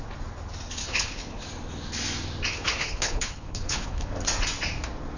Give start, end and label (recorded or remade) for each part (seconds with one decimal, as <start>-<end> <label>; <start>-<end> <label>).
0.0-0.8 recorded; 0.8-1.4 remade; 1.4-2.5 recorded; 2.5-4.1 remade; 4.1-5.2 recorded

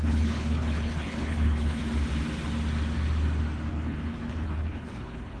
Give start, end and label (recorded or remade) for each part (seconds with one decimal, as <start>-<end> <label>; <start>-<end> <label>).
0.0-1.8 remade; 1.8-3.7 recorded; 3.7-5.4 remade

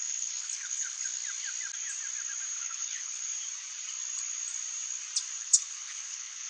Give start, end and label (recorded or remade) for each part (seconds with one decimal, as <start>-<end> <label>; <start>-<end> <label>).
0.0-1.2 remade; 1.2-2.6 recorded; 2.6-3.3 remade; 3.3-5.4 recorded; 5.4-6.5 remade

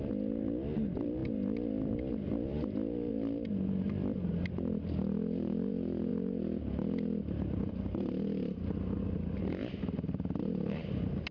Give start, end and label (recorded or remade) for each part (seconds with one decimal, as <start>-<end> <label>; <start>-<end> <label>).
0.0-11.3 recorded

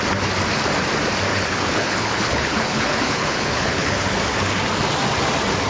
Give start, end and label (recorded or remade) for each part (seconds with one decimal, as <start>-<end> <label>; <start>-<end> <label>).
0.0-1.3 recorded; 1.3-4.1 remade; 4.1-5.7 recorded